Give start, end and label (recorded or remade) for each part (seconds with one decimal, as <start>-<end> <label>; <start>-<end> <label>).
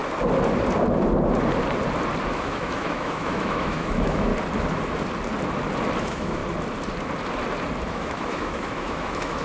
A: 0.0-2.3 recorded; 2.3-4.3 remade; 4.3-6.0 recorded; 6.0-6.4 remade; 6.4-7.9 recorded; 7.9-9.4 remade